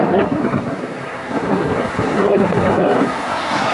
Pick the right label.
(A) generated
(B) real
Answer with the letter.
A